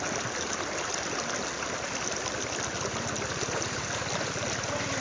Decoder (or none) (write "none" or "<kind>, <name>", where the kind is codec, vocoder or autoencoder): none